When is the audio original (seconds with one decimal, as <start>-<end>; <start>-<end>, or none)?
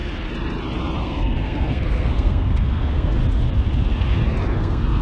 0.0-1.0; 3.2-4.6